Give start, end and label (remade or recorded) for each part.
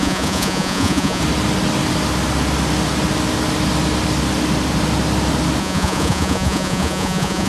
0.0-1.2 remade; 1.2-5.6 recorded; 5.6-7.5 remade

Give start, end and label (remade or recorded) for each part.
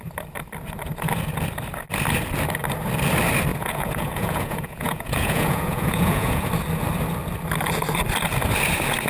0.0-3.5 recorded; 3.5-6.5 remade; 6.5-9.1 recorded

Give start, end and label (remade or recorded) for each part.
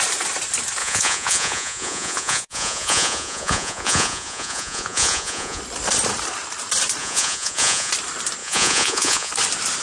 0.0-0.8 recorded; 0.8-5.6 remade; 5.6-7.0 recorded; 7.0-7.9 remade; 7.9-8.4 recorded; 8.4-9.3 remade; 9.3-9.8 recorded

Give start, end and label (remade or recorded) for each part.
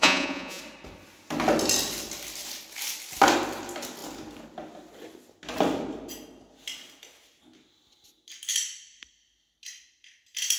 0.0-0.6 remade; 0.6-10.6 recorded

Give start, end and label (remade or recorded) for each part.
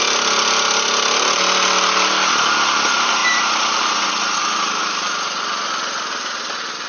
0.0-6.9 recorded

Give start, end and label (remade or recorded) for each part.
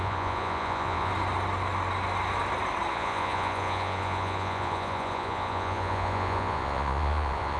0.0-1.1 remade; 1.1-2.9 recorded; 2.9-7.6 remade